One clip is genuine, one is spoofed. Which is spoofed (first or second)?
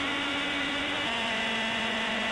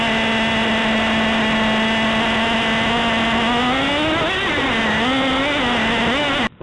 first